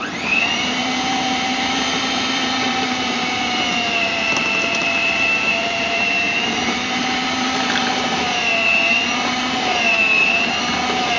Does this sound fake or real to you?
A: fake